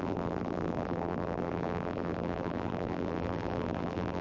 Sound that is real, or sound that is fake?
fake